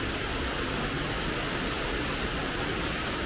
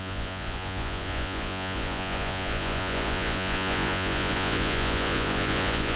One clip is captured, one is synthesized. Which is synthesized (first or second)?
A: second